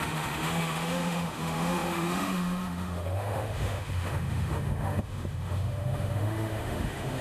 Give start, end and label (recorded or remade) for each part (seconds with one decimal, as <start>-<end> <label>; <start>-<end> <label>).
0.0-7.2 remade